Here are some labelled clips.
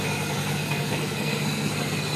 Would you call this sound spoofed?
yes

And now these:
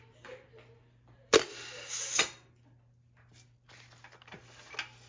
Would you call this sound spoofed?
no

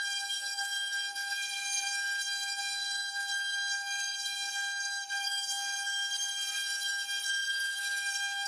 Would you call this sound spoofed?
yes